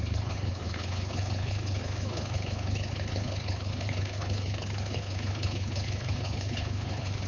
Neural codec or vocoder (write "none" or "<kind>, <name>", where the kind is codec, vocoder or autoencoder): codec, HILCodec